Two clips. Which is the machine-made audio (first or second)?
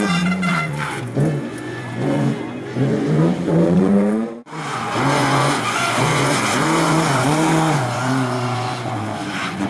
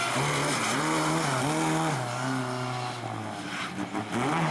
first